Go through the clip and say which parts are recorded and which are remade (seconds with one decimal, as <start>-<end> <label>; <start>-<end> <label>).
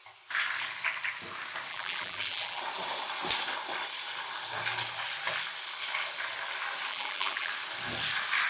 0.0-1.7 recorded; 1.7-2.6 remade; 2.6-6.9 recorded; 6.9-7.5 remade; 7.5-8.5 recorded